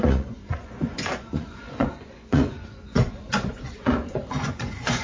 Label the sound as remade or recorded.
remade